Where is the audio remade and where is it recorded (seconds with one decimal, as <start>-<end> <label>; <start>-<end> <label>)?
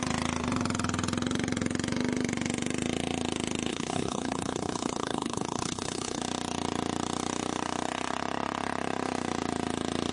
0.0-3.7 recorded; 3.7-6.2 remade; 6.2-10.1 recorded